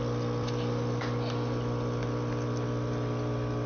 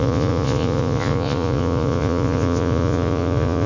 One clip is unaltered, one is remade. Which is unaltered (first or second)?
first